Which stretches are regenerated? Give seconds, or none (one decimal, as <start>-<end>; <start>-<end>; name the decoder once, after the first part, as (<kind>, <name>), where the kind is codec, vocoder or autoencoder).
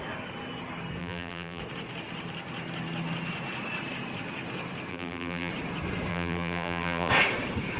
1.0-1.6 (vocoder, BigVGAN v2); 4.9-5.5; 6.1-7.1